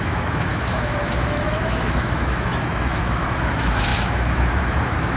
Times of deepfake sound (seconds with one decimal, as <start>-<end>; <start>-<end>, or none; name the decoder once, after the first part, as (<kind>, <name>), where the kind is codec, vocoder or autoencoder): 0.0-5.2 (autoencoder, DAC-VAE)